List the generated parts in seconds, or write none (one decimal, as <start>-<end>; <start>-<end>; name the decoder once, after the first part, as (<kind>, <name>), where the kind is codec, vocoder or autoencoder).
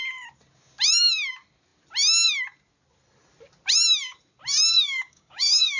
4.7-5.8 (codec, DAC)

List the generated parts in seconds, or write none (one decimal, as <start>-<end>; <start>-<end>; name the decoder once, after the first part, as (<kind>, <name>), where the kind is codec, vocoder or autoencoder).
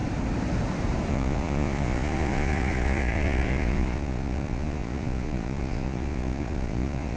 1.1-7.2 (vocoder, Vocos)